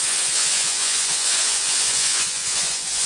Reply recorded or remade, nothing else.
remade